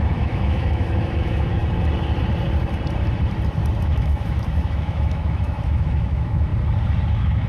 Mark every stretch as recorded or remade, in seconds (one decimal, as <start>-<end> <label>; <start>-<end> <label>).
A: 0.0-1.6 remade; 1.6-3.8 recorded; 3.8-6.5 remade; 6.5-7.1 recorded; 7.1-7.5 remade